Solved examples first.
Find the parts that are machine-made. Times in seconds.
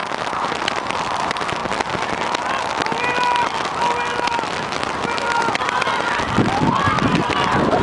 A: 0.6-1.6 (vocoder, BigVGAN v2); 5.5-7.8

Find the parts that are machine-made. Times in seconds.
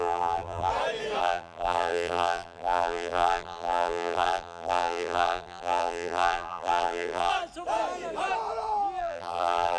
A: 0.0-0.7 (vocoder, BigVGAN v2); 1.2-7.3; 9.0-9.8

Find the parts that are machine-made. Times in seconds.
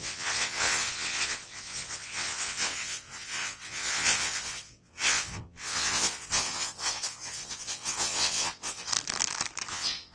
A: 0.0-8.9 (vocoder, WaveNeXt); 9.7-10.1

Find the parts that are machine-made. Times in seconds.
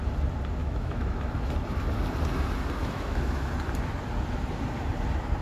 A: 0.6-1.3 (autoencoder, DAC-VAE); 2.8-3.5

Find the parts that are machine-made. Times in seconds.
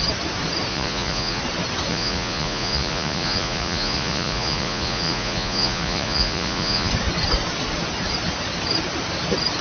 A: 0.7-1.4 (vocoder, Vocos); 1.9-6.9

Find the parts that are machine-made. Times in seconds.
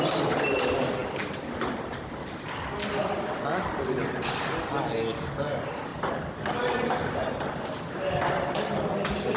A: none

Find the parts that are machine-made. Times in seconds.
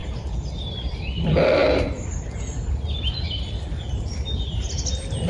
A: none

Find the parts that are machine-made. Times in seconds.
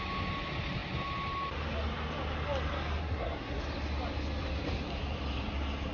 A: 3.0-3.6 (codec, SNAC)